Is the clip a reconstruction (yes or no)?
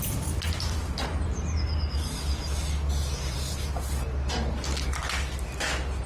no